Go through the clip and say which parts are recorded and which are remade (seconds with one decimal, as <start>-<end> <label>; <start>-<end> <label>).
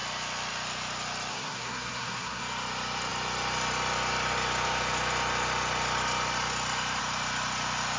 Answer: 0.0-1.3 recorded; 1.3-2.4 remade; 2.4-8.0 recorded